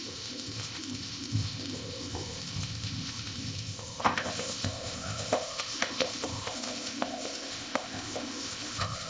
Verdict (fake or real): fake